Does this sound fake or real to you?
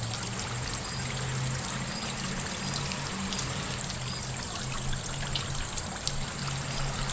real